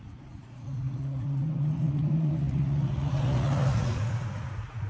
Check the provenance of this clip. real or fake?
fake